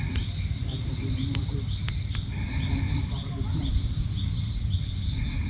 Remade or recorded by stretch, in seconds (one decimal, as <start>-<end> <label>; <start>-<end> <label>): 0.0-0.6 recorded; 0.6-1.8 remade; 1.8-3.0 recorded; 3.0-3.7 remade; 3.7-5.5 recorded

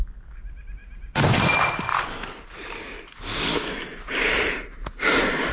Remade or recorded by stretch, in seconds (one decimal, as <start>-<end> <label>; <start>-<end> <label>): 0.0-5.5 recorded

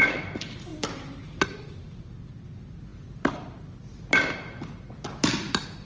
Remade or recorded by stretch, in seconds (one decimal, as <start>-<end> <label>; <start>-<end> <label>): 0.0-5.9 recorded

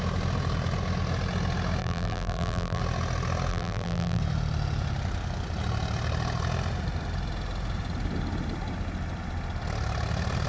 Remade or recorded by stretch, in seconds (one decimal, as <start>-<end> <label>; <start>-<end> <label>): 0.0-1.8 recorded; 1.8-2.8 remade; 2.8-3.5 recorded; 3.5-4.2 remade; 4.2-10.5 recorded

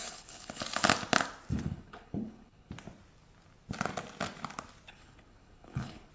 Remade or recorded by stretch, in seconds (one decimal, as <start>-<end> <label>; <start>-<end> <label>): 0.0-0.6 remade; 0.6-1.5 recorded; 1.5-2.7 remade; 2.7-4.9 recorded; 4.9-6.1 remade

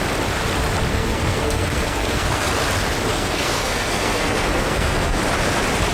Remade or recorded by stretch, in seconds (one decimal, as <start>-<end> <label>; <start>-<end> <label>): 0.0-0.9 recorded; 0.9-2.5 remade; 2.5-3.1 recorded; 3.1-5.2 remade; 5.2-5.9 recorded

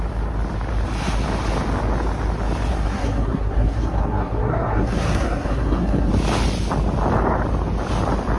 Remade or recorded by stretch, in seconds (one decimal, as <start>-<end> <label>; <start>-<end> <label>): 0.0-2.7 recorded; 2.7-6.1 remade; 6.1-8.4 recorded

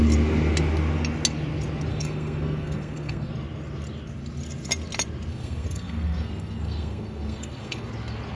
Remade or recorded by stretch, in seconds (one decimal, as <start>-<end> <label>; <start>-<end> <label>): 0.0-1.9 recorded; 1.9-3.3 remade; 3.3-5.3 recorded; 5.3-7.9 remade; 7.9-8.3 recorded